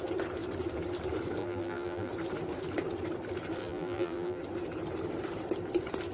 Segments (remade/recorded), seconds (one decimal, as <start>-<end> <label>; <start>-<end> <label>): 0.0-1.4 recorded; 1.4-2.1 remade; 2.1-3.6 recorded; 3.6-4.4 remade; 4.4-6.1 recorded